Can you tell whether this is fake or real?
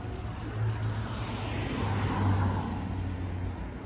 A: real